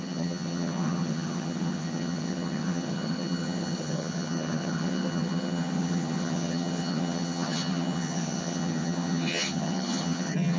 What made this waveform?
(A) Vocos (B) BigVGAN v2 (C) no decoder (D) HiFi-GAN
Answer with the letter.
D